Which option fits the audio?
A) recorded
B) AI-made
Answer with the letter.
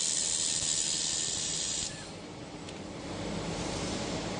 B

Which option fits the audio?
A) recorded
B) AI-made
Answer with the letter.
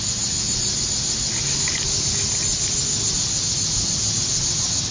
A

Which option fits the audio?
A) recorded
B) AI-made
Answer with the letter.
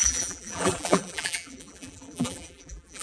B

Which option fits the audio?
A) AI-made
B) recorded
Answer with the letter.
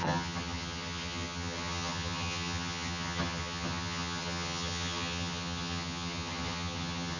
A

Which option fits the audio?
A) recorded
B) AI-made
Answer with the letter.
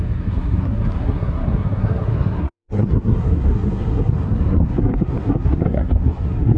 B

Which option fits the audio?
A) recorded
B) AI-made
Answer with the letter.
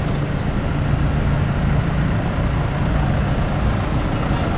A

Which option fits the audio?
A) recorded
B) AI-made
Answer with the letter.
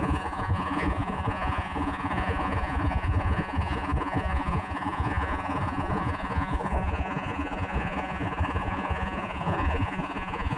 B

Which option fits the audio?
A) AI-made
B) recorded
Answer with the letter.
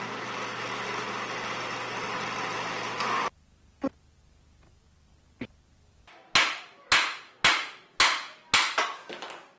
B